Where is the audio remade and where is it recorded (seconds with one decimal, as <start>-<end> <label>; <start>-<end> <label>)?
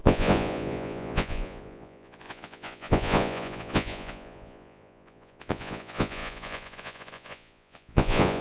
0.0-8.4 remade